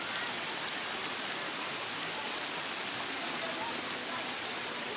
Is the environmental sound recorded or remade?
recorded